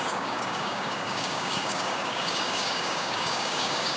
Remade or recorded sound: remade